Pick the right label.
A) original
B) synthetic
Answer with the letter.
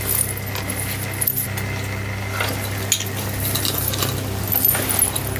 A